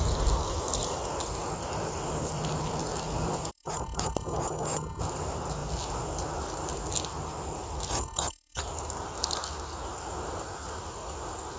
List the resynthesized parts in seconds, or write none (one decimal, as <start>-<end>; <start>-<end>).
3.5-5.0; 7.9-8.6